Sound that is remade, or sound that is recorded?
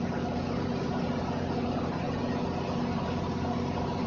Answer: recorded